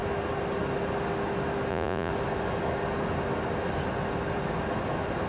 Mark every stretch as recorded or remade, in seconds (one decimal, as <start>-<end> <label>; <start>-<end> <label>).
0.0-1.7 recorded; 1.7-2.1 remade; 2.1-5.3 recorded

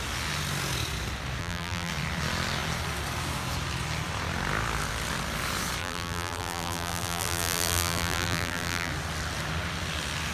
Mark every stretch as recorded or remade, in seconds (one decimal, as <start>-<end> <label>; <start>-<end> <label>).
0.0-1.4 recorded; 1.4-1.9 remade; 1.9-5.8 recorded; 5.8-8.9 remade; 8.9-10.3 recorded

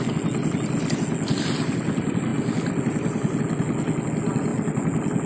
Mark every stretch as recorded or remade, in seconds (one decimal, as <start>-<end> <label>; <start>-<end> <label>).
0.0-5.3 recorded